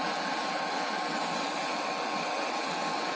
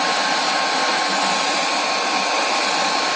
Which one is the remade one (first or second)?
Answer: first